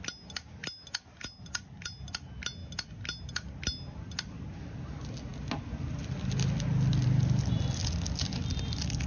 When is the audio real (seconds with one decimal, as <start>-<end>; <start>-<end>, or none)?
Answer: 0.0-9.1